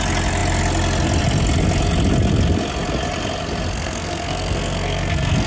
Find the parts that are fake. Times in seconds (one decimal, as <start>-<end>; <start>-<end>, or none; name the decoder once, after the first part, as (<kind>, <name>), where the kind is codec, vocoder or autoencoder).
3.7-5.5 (codec, SNAC)